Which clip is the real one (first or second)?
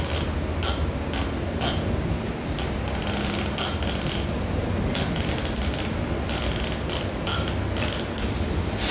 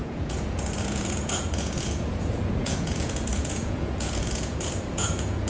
first